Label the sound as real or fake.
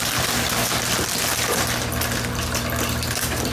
real